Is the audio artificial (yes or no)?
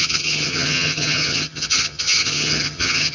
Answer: yes